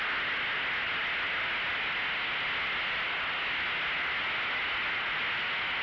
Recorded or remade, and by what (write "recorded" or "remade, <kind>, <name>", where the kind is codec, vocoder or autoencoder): recorded